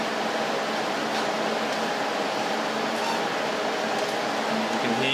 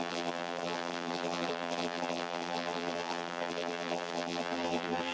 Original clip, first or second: first